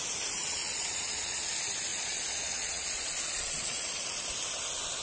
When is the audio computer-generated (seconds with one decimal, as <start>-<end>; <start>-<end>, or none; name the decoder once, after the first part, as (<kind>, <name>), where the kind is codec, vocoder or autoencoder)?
0.4-1.4 (vocoder, Vocos); 1.9-4.3